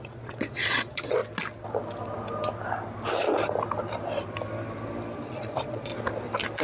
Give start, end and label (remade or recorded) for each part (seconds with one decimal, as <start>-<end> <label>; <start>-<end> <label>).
0.0-1.2 remade; 1.2-5.2 recorded; 5.2-5.9 remade; 5.9-6.6 recorded